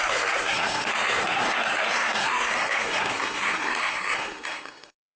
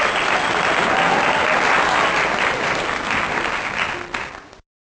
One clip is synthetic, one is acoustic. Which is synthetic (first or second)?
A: first